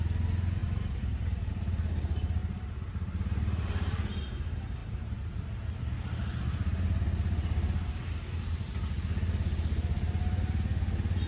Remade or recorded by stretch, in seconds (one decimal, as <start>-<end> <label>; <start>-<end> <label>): 0.0-0.6 recorded; 0.6-1.5 remade; 1.5-2.4 recorded; 2.4-4.2 remade; 4.2-4.8 recorded; 4.8-5.9 remade; 5.9-11.3 recorded